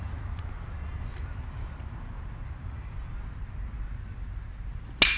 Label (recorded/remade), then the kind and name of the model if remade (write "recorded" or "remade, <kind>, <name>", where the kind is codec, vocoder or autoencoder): recorded